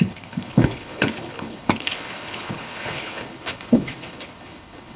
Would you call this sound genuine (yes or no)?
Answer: no